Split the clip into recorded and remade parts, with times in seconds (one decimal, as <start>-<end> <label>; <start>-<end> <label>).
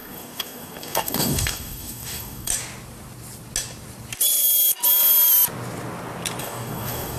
0.0-2.5 remade; 2.5-6.4 recorded; 6.4-7.2 remade